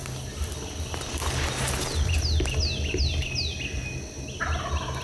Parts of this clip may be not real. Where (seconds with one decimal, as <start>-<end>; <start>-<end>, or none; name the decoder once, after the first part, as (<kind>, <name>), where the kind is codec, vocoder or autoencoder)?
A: none